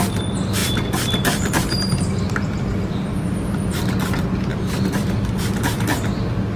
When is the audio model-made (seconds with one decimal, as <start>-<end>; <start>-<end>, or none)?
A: 0.6-3.8; 4.5-5.8